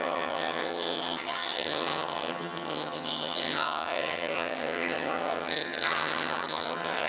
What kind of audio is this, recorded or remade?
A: remade